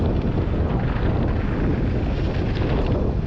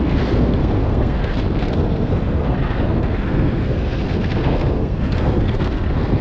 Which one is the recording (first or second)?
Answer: first